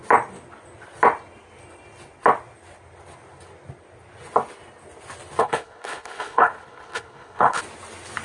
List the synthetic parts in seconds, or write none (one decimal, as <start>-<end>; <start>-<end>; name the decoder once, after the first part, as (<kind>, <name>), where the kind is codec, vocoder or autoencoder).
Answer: 5.4-7.6 (codec, HILCodec)